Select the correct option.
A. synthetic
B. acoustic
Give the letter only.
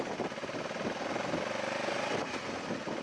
B